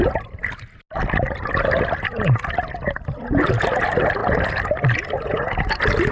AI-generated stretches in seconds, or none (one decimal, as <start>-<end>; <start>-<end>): none